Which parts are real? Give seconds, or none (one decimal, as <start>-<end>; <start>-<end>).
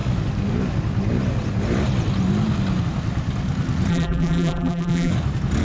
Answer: 0.0-3.9; 5.1-5.6